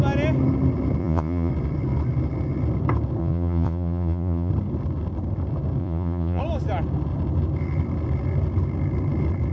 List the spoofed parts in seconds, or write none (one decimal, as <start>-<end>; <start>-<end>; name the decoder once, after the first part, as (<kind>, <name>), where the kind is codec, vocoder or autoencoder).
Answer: 1.0-1.5 (vocoder, Vocos); 3.2-4.5; 5.8-6.4